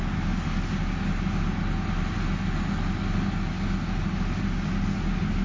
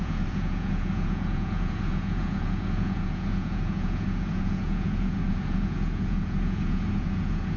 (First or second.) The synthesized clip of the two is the second